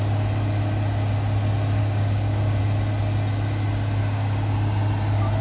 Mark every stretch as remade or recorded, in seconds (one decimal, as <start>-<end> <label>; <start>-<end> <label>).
0.0-1.8 recorded; 1.8-2.6 remade; 2.6-4.0 recorded; 4.0-4.5 remade; 4.5-5.4 recorded